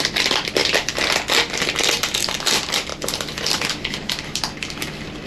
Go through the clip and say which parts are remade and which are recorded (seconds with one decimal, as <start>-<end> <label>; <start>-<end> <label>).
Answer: 0.0-5.3 recorded